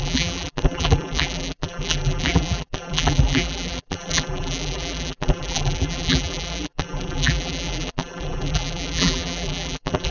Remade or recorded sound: remade